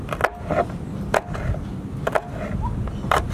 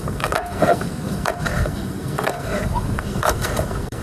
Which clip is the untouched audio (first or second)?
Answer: first